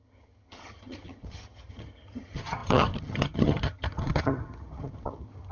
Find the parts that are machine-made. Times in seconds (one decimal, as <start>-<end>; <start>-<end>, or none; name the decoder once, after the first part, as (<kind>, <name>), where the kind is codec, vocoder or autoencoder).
0.0-5.5 (vocoder, HiFi-GAN)